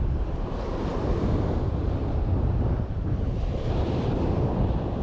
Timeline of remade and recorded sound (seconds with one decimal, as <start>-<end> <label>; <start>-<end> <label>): 0.0-5.0 remade